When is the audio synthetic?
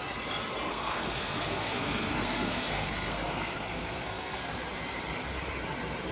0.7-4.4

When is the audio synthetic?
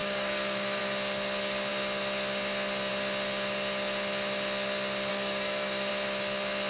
0.0-0.8; 5.1-5.9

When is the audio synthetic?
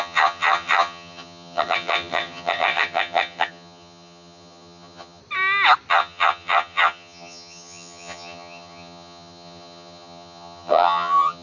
0.0-5.2; 5.9-11.4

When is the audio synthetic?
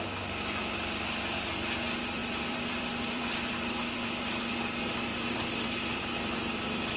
2.2-4.6; 5.1-6.0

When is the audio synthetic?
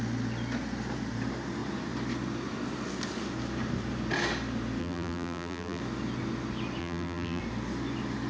4.8-5.8; 6.8-7.4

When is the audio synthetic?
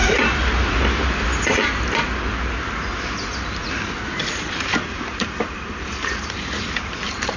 4.3-7.4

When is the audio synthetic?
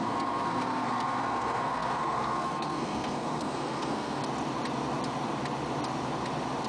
0.0-4.2